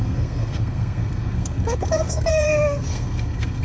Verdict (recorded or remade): remade